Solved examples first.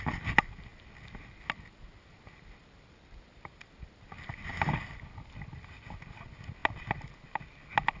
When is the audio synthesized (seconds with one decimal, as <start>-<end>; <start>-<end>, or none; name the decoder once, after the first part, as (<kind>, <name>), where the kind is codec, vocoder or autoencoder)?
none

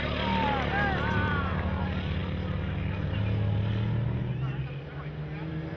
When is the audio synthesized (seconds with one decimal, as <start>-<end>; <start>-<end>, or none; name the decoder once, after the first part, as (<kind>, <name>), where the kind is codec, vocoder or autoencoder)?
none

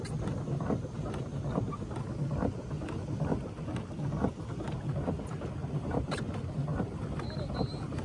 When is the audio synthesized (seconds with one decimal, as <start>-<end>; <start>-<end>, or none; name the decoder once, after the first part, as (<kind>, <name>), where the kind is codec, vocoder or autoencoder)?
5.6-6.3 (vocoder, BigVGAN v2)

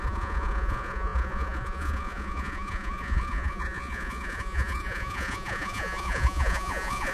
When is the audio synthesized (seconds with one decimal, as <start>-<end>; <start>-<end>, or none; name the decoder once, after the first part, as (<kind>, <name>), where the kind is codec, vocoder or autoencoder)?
0.0-7.1 (vocoder, Vocos)